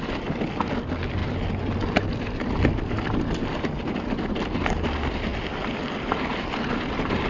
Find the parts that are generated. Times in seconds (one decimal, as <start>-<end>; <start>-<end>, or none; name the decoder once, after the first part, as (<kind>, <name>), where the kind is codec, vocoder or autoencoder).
none